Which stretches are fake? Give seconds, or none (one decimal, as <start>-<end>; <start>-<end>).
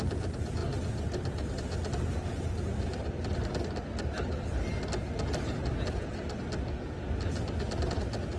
none